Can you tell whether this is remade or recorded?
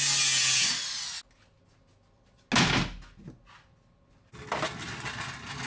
recorded